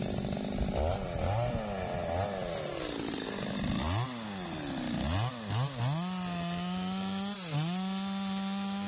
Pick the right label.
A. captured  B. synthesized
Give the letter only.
A